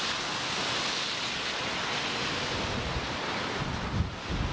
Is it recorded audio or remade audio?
recorded